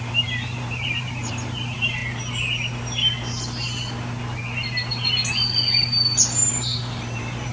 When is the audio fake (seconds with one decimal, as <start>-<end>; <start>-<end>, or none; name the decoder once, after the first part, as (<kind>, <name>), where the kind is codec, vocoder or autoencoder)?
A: 0.0-2.0 (vocoder, BigVGAN v2); 6.5-7.5